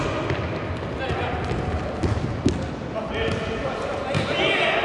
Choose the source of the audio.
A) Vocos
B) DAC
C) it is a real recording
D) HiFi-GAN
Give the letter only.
C